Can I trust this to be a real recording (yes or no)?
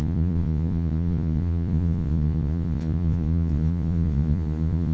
no